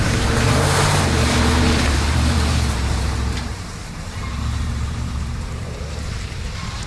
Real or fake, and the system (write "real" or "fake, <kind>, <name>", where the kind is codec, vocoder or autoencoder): fake, vocoder, BigVGAN v2